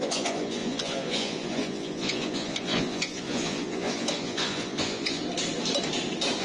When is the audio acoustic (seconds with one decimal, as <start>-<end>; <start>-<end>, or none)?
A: 5.2-6.4